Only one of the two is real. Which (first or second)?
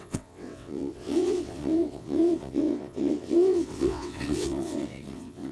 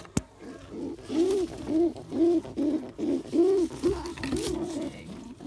second